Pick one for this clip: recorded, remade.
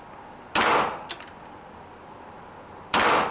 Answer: recorded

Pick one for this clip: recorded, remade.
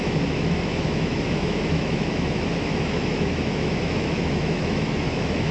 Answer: remade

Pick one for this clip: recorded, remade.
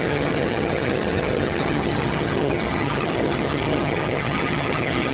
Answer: remade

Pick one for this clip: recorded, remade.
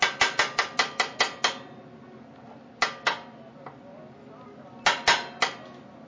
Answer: recorded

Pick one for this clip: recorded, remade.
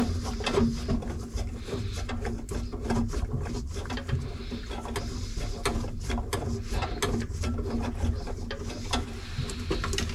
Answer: recorded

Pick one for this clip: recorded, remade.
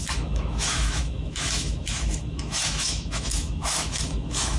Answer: remade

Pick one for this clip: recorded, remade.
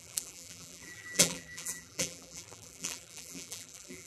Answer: remade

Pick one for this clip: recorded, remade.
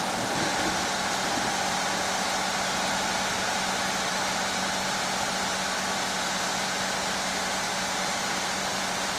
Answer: recorded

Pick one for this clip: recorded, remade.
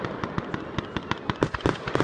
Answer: recorded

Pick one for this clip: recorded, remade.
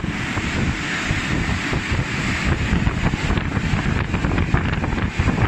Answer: recorded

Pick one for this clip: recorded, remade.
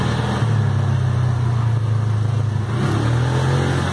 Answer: recorded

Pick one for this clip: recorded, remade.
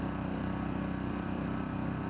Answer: remade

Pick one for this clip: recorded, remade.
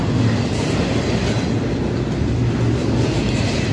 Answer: recorded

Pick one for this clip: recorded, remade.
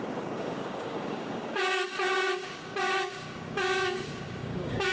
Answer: remade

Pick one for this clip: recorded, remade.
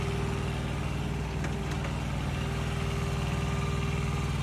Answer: recorded